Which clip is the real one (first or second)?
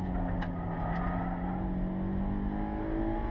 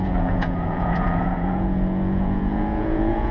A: first